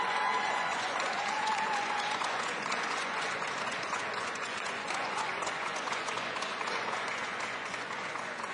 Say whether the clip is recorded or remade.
remade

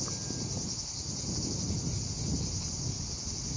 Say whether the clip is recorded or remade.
recorded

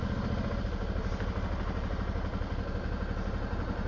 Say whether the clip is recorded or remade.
recorded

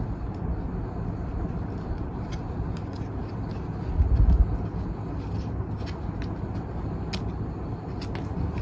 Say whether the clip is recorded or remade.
recorded